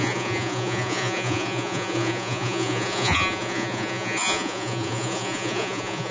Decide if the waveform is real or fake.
fake